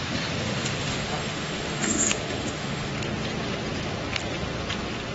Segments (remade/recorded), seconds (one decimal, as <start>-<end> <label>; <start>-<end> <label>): 0.0-0.4 recorded; 0.4-2.9 remade; 2.9-5.1 recorded